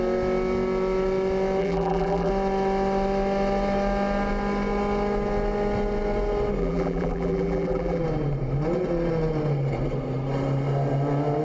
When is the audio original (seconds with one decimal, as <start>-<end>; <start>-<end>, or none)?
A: 0.0-1.6; 2.3-6.6; 8.0-11.4